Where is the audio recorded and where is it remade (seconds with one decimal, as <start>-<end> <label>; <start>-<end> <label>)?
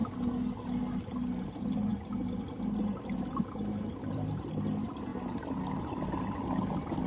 0.0-1.0 recorded; 1.0-1.9 remade; 1.9-4.0 recorded; 4.0-5.1 remade; 5.1-5.7 recorded; 5.7-7.1 remade